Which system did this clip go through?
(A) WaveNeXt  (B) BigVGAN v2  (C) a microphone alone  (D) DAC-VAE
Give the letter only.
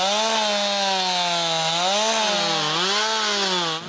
C